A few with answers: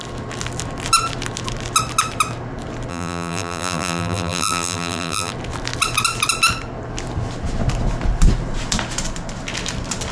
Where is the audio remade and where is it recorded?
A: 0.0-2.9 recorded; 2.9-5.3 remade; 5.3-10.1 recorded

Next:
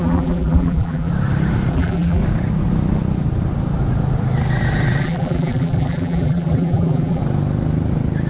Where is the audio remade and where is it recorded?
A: 0.0-1.1 remade; 1.1-1.7 recorded; 1.7-2.2 remade; 2.2-5.0 recorded; 5.0-7.2 remade; 7.2-8.3 recorded